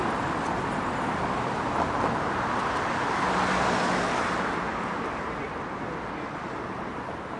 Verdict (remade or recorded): recorded